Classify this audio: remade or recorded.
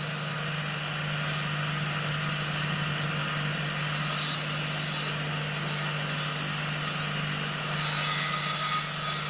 recorded